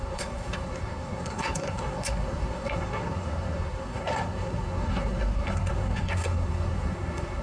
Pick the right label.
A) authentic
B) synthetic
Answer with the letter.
B